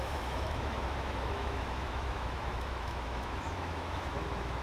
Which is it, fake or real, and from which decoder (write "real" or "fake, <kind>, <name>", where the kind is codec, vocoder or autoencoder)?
fake, autoencoder, DAC-VAE